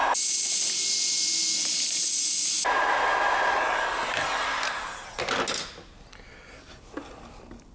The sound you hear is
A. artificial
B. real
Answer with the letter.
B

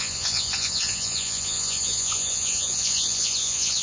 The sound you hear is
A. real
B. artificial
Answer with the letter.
B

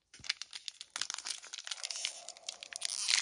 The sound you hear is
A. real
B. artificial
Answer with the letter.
A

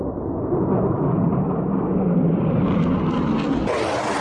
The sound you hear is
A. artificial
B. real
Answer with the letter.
B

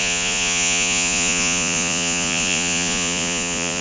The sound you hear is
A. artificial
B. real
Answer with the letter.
A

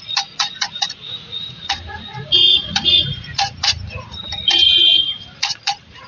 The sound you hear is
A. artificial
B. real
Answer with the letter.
A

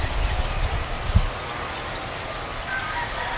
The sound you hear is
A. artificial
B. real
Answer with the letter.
B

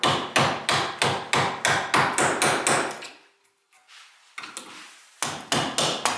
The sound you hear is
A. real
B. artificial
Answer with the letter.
A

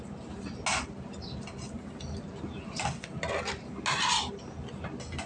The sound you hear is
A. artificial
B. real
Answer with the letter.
B